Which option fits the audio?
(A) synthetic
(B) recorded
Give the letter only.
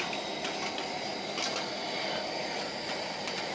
B